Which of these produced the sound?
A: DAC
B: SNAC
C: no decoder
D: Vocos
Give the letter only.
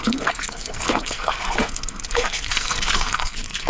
B